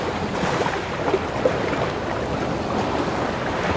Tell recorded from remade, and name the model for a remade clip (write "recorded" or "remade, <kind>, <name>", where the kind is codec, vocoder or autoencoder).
recorded